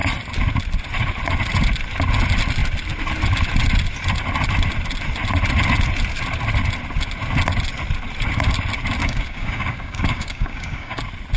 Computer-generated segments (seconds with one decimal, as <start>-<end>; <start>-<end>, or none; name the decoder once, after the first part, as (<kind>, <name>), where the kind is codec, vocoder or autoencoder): 9.0-11.0 (codec, DAC)